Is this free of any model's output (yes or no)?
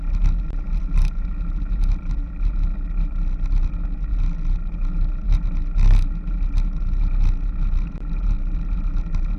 yes